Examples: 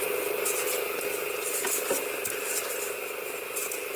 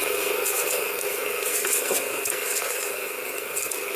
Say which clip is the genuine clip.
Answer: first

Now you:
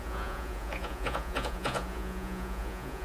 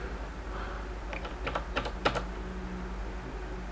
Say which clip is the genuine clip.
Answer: second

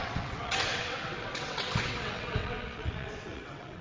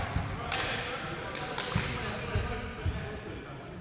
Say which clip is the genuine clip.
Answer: second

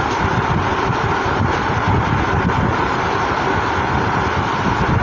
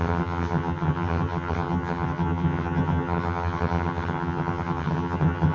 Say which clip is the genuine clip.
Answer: first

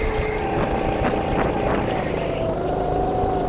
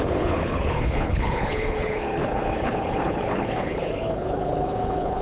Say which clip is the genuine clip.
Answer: first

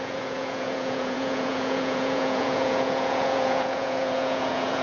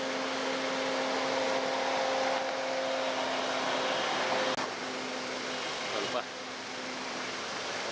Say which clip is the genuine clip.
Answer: second